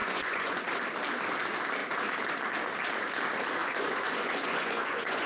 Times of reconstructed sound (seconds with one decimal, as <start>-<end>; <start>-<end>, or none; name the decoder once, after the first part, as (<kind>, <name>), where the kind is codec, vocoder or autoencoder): 0.0-0.6 (vocoder, Vocos); 3.6-5.3